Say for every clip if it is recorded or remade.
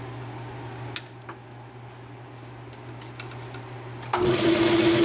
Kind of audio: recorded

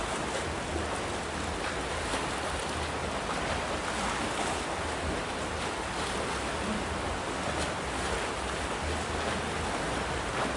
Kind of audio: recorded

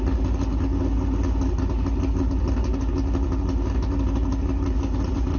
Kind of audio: recorded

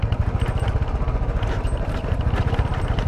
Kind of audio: recorded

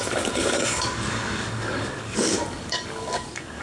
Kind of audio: remade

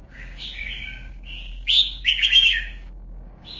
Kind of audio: remade